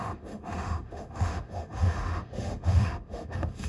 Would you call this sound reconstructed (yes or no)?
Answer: yes